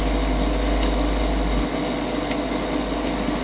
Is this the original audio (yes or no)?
yes